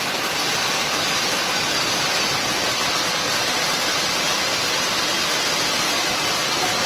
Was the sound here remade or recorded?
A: recorded